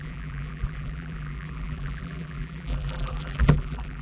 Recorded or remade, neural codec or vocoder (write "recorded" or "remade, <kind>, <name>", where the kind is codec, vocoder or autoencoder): remade, vocoder, BigVGAN v2